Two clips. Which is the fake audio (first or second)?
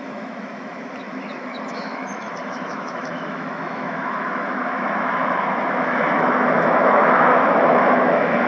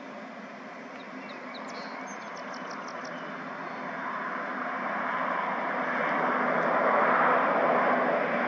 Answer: first